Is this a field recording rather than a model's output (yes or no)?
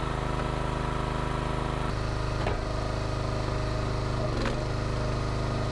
yes